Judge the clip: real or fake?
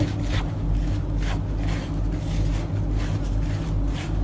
real